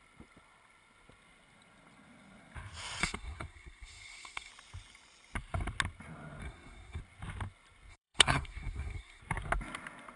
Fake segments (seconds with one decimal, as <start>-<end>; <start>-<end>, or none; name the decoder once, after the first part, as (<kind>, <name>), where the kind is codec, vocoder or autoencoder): 3.0-4.5 (codec, SNAC); 6.4-7.0; 7.9-9.2